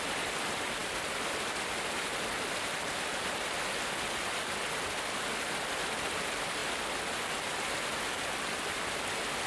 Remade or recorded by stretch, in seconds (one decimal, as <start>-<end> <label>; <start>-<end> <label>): 0.0-9.5 recorded